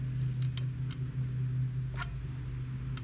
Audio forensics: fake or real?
real